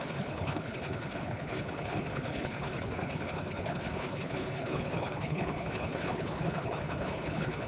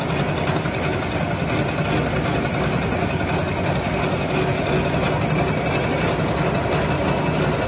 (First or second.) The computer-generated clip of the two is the first